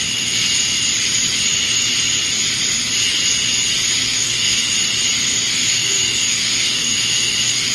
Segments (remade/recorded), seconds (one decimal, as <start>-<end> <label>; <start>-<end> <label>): 0.0-4.0 recorded; 4.0-4.7 remade; 4.7-5.5 recorded; 5.5-7.7 remade